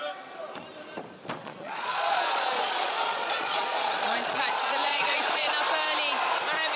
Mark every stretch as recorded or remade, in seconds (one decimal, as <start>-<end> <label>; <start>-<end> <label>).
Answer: 0.0-1.4 recorded; 1.4-5.5 remade; 5.5-6.8 recorded